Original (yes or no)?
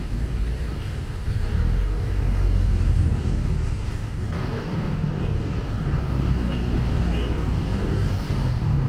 no